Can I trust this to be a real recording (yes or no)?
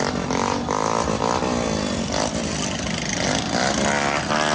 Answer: yes